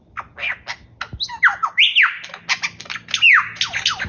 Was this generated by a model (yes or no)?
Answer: no